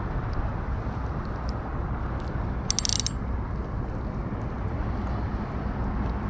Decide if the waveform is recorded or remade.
recorded